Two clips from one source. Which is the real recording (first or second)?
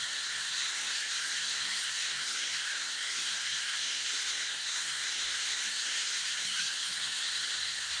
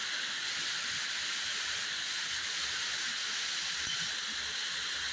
second